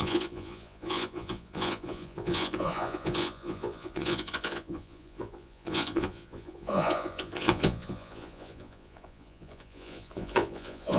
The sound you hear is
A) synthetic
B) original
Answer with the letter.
A